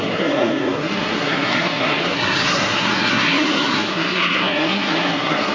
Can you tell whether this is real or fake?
fake